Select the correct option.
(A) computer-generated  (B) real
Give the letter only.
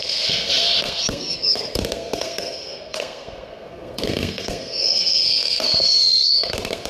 A